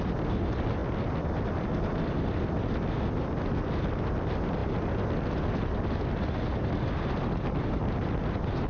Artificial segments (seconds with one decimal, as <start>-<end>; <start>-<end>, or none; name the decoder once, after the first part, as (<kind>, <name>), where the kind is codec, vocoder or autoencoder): none